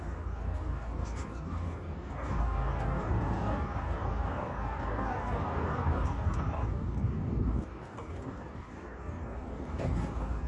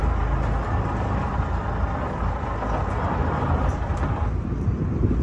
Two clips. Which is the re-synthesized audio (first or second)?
first